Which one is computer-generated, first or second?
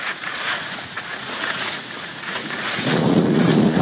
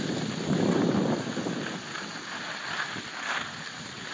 first